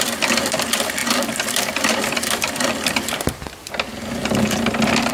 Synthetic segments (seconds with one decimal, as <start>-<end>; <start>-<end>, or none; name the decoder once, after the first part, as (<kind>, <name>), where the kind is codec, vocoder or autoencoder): 1.0-3.7 (vocoder, BigVGAN v2); 4.2-5.1